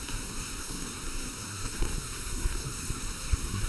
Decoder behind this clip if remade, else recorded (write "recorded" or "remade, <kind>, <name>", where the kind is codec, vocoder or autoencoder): remade, codec, SNAC